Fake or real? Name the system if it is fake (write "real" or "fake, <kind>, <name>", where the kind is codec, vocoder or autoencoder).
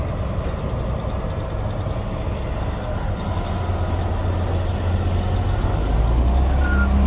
real